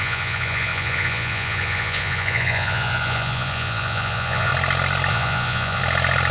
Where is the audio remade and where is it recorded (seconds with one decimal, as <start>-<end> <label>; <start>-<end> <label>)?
0.0-4.5 remade; 4.5-5.1 recorded; 5.1-5.8 remade; 5.8-6.3 recorded